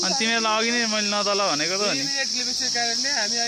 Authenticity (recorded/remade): recorded